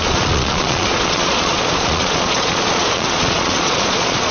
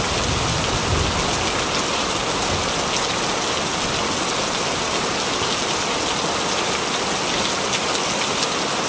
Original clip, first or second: second